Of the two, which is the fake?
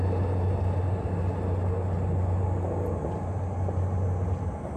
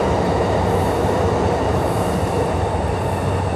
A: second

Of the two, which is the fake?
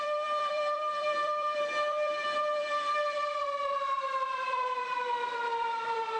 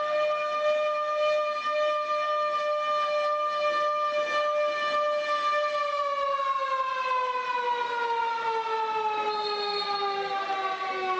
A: first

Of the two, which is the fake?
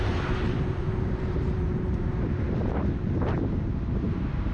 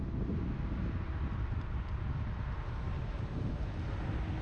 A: first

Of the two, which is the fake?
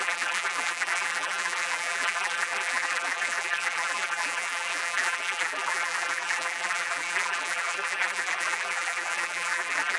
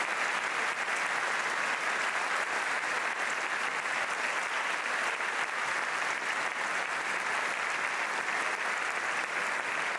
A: first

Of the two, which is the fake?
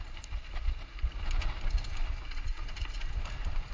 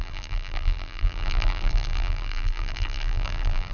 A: second